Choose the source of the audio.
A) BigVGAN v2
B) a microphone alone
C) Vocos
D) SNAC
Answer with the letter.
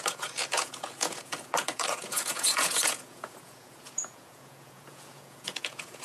C